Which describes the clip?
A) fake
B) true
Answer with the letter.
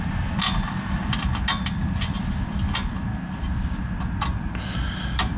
B